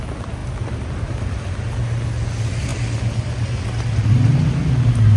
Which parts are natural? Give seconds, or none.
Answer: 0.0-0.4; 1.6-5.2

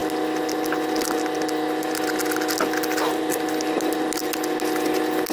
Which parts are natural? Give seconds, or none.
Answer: 0.0-5.3

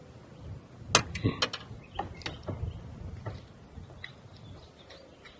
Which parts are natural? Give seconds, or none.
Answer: 0.0-5.4

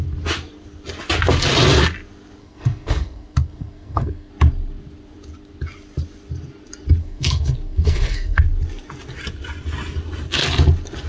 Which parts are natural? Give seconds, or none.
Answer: 0.0-2.4; 4.3-7.0; 8.4-11.1

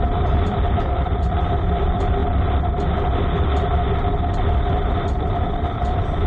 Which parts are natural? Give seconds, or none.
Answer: 2.2-5.0

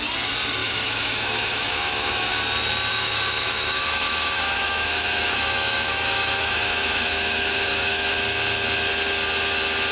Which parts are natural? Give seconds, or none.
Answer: 0.0-0.6; 2.4-2.9; 8.1-9.9

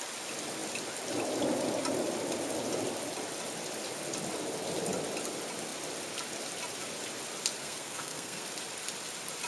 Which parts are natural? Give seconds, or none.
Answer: 0.0-7.6; 8.4-9.5